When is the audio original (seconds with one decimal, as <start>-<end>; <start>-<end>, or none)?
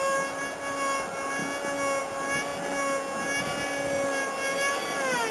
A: 1.4-2.0; 2.5-3.4